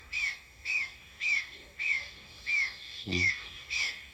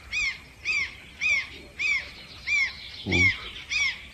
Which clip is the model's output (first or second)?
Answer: first